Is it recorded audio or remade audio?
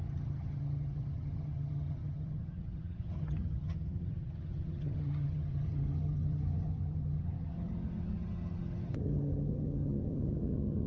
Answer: remade